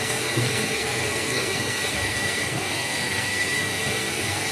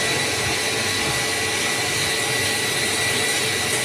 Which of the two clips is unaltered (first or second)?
second